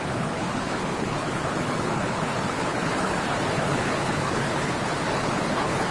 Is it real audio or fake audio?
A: fake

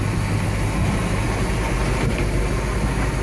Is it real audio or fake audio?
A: real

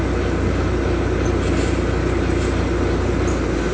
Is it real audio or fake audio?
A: real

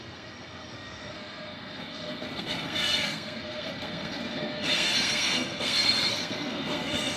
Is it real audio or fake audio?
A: fake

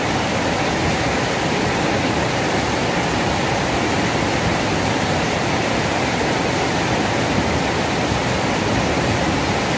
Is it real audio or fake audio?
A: real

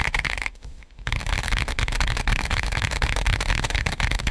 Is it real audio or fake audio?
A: fake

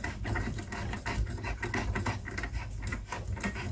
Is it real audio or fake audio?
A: real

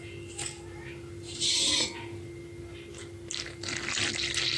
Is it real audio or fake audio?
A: real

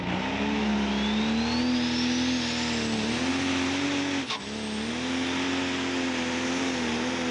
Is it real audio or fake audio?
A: real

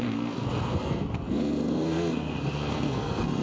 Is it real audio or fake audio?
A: fake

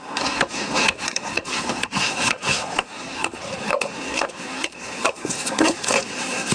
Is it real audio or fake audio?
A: fake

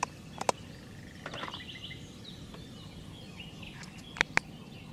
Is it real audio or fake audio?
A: real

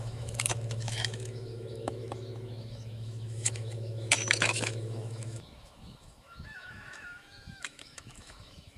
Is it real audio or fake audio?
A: fake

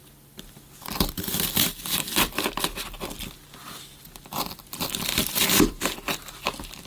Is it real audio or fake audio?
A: fake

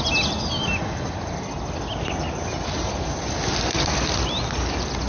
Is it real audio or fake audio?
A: real